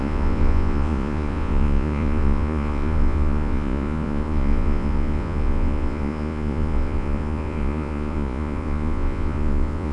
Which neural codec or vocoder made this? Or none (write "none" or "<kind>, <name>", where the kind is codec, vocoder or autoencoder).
vocoder, Vocos